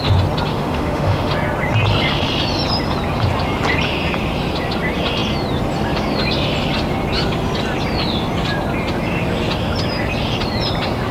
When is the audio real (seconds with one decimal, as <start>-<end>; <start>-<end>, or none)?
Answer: 0.0-0.5; 1.3-11.1